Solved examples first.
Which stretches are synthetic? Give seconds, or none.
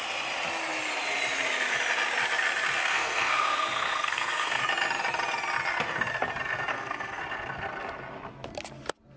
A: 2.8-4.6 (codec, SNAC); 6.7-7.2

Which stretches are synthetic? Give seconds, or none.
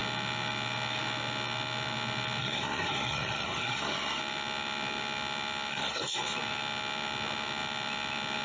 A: 2.4-4.2 (codec, SNAC); 5.7-6.2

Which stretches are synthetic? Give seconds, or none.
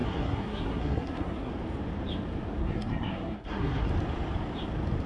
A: 0.0-1.5 (codec, SNAC); 2.6-3.9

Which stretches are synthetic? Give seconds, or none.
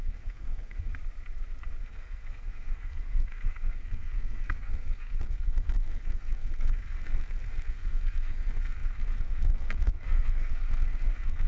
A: 0.0-0.9 (codec, SNAC); 1.8-11.5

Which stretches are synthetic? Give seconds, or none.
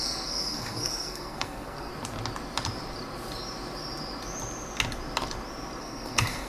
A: 0.0-1.9 (codec, SNAC); 5.8-6.5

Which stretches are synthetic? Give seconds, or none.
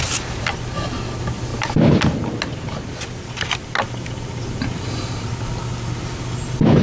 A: none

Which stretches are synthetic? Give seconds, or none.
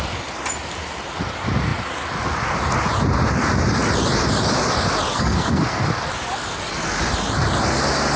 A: 5.1-5.9 (codec, SNAC)